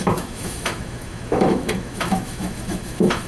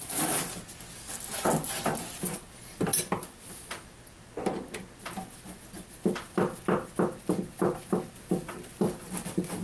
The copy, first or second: first